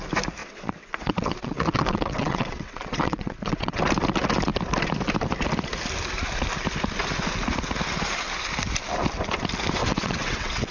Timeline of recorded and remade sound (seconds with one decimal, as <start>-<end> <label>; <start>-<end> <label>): 0.0-0.4 recorded; 0.4-3.8 remade; 3.8-9.8 recorded; 9.8-10.7 remade